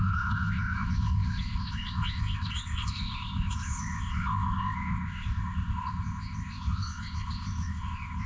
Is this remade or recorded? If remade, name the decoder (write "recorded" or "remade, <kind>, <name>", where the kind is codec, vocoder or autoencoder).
remade, codec, ZipCodec